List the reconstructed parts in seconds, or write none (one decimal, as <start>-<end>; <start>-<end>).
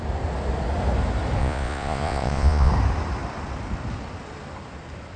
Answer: 1.4-2.7